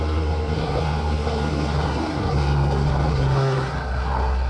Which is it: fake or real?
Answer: fake